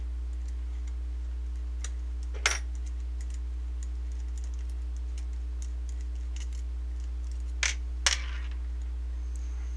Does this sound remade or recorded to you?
recorded